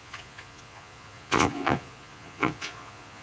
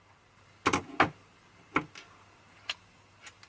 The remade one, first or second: first